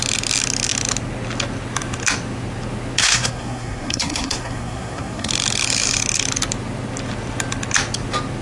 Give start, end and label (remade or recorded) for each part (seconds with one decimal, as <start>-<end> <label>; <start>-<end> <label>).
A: 0.0-3.0 recorded; 3.0-5.3 remade; 5.3-8.4 recorded